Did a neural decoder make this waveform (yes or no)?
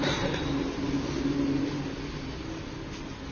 no